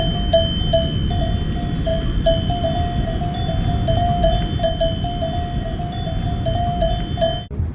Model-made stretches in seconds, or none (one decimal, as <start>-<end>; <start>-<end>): none